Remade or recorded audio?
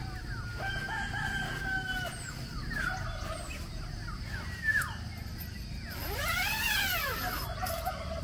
recorded